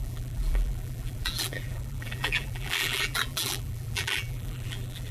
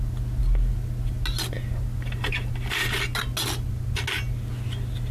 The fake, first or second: first